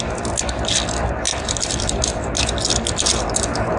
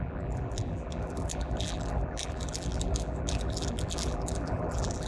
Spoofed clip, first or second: second